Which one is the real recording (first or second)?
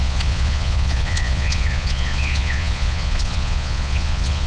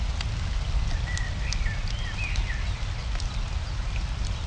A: second